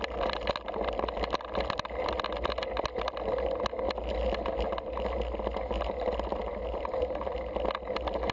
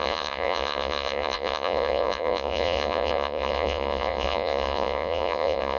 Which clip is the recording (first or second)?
first